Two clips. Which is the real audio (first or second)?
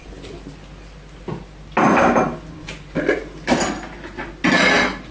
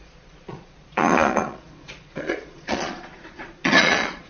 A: first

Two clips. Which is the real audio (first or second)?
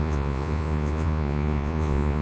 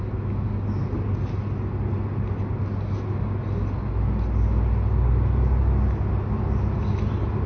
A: second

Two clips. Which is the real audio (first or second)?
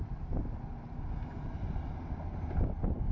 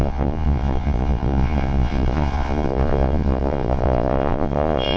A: first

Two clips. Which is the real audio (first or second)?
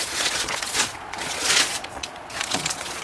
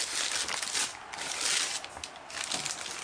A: second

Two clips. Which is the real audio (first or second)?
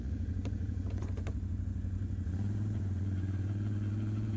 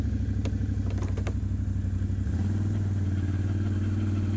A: second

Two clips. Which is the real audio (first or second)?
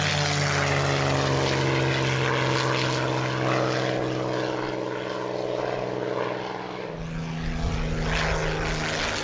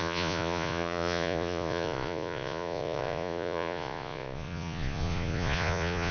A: first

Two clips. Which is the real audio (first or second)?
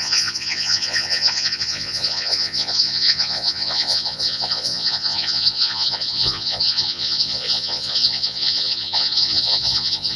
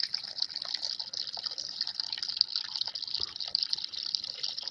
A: second